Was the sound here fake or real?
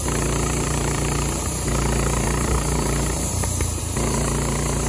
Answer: fake